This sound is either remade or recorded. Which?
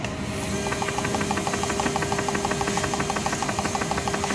recorded